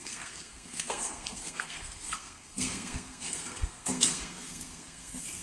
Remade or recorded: remade